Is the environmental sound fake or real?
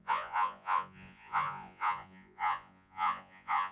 fake